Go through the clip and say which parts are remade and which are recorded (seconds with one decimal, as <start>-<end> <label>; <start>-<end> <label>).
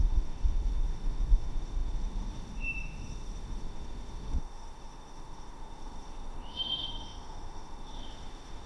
0.0-8.7 remade